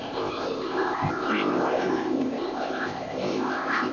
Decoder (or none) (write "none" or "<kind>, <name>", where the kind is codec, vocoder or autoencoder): codec, ZipCodec